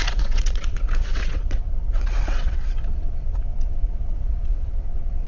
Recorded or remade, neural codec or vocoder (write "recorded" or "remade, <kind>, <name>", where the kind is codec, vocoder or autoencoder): remade, vocoder, WaveNeXt